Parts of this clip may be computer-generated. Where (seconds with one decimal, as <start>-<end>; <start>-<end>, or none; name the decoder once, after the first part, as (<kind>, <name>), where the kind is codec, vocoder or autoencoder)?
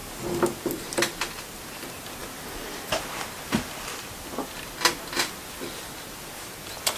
none